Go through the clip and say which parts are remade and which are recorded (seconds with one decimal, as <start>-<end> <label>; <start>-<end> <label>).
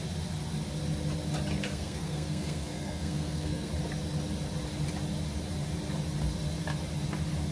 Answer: 0.0-1.7 recorded; 1.7-3.7 remade; 3.7-7.5 recorded